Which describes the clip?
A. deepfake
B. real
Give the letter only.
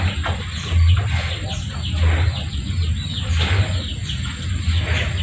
B